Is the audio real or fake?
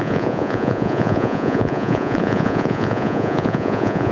fake